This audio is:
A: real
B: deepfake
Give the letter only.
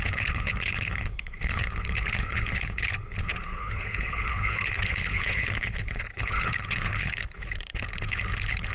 B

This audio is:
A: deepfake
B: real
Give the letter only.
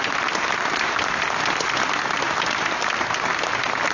B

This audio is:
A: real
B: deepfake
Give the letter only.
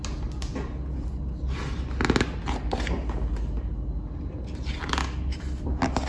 A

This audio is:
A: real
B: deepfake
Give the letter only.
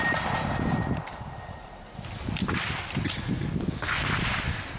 A